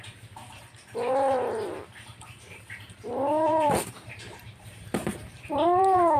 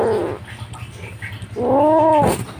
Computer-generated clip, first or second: first